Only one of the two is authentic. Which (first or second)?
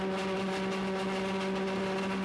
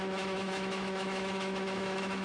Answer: first